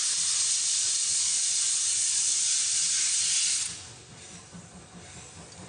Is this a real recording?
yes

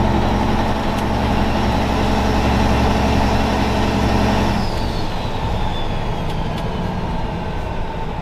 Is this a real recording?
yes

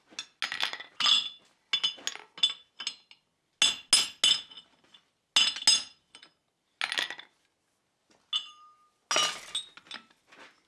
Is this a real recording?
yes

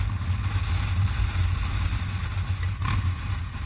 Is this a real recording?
yes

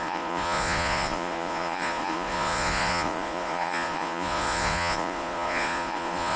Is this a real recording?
no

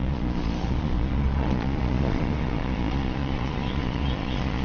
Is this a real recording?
no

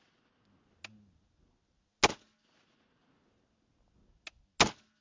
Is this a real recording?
yes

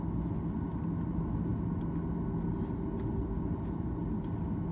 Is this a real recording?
yes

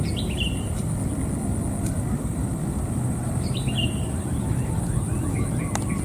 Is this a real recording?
yes